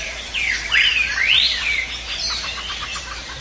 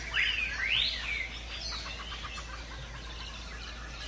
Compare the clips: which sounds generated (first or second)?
first